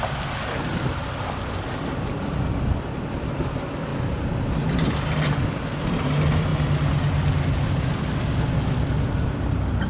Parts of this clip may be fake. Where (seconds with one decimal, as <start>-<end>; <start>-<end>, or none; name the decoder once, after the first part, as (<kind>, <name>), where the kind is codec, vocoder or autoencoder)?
none